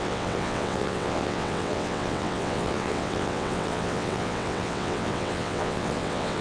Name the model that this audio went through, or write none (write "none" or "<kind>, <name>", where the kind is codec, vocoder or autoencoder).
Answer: vocoder, WaveNeXt